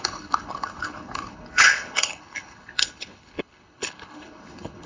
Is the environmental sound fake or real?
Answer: fake